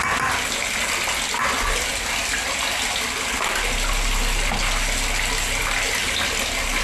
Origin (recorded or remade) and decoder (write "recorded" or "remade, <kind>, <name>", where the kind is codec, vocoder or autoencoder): recorded